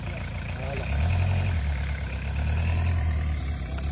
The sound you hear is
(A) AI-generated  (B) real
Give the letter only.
A